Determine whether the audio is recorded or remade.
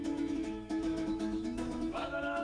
remade